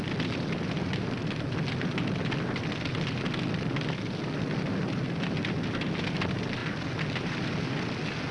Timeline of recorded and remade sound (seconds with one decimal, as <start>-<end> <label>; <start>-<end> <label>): 0.0-8.3 recorded